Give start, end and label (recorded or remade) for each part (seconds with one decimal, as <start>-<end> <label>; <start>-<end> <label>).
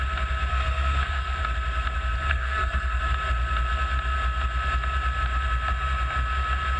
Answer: 0.0-0.5 recorded; 0.5-1.4 remade; 1.4-2.3 recorded; 2.3-3.0 remade; 3.0-6.8 recorded